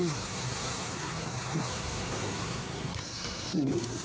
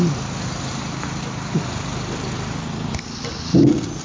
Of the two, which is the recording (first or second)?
second